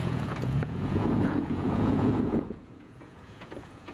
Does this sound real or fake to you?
fake